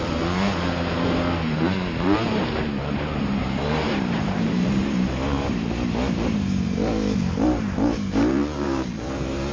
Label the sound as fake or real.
fake